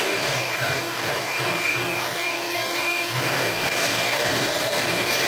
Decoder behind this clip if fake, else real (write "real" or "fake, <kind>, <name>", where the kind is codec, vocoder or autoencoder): fake, codec, DAC